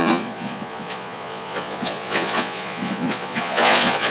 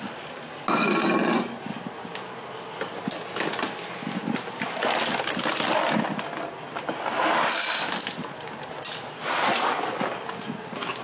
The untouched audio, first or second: second